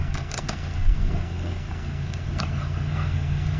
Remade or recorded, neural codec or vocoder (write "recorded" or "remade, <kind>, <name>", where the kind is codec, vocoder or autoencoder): remade, codec, SNAC